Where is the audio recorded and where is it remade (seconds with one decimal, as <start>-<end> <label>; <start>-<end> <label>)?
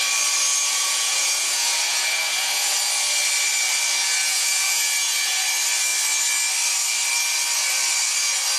0.0-0.5 recorded; 0.5-2.8 remade; 2.8-4.0 recorded; 4.0-5.5 remade; 5.5-8.6 recorded